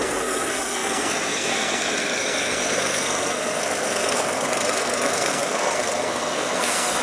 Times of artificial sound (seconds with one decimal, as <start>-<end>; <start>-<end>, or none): 0.0-7.0